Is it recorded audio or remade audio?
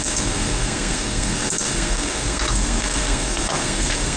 remade